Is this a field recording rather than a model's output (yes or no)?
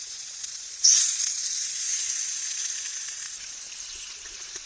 no